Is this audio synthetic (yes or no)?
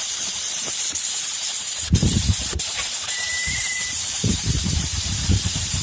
yes